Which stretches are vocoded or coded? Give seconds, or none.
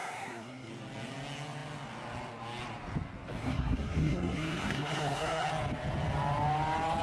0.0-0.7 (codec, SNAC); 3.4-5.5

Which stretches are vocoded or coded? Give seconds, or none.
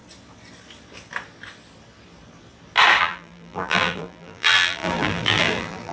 3.0-5.9 (vocoder, BigVGAN v2)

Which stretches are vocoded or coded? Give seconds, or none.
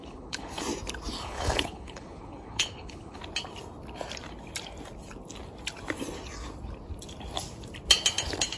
0.0-0.6 (codec, HILCodec); 1.2-3.2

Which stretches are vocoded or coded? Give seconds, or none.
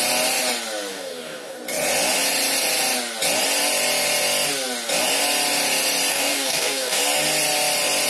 0.9-1.6 (codec, DAC); 6.1-7.0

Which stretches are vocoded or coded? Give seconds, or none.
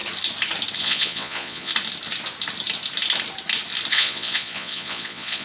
0.8-1.7 (vocoder, Vocos); 3.9-5.4